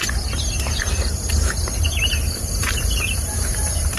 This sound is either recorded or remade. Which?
remade